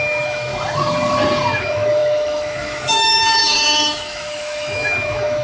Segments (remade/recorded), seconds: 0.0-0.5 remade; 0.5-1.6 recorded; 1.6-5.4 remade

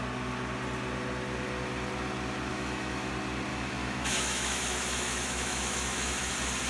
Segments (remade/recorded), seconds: 0.0-2.5 recorded; 2.5-3.1 remade; 3.1-3.5 recorded; 3.5-6.3 remade; 6.3-6.7 recorded

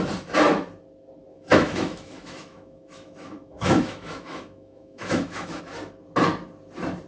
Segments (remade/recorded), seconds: 0.0-1.3 recorded; 1.3-5.6 remade; 5.6-7.1 recorded

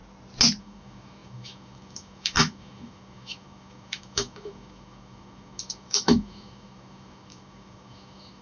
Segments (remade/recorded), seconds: 0.0-0.6 recorded; 0.6-8.4 remade

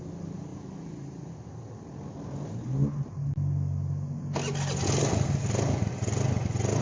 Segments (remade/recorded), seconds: 0.0-6.8 recorded

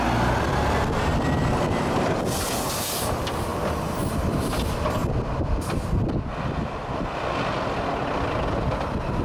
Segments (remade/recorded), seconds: 0.0-9.2 recorded

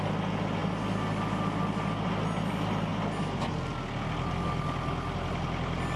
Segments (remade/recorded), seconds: 0.0-6.0 recorded